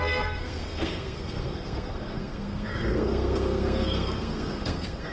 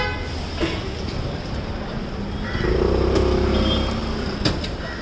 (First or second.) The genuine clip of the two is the second